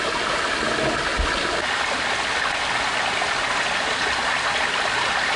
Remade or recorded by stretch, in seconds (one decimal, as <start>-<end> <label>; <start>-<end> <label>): 0.0-5.4 recorded